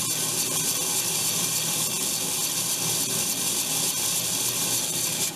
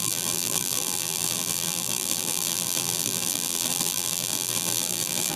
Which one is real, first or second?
first